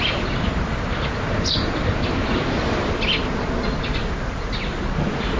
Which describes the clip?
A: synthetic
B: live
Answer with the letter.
B